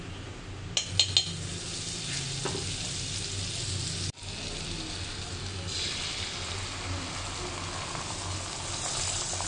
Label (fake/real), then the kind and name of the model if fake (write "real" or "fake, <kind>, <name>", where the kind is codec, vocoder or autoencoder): real